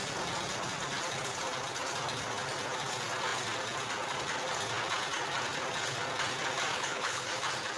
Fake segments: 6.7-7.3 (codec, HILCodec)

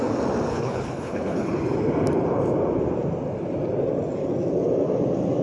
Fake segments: 0.5-1.5 (codec, HILCodec)

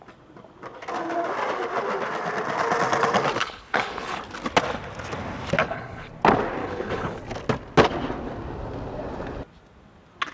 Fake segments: 3.4-4.2 (codec, HILCodec); 5.6-6.1; 6.6-7.2

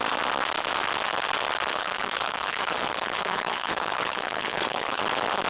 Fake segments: 1.7-5.0 (codec, HILCodec)

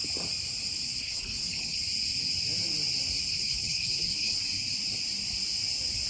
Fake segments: 1.0-1.8 (codec, HILCodec); 3.3-4.4

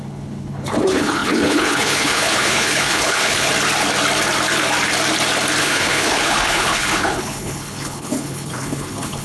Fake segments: 0.0-3.5 (codec, HILCodec); 5.6-9.2